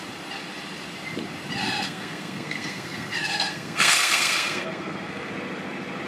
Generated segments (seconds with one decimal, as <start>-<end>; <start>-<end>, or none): 1.6-5.3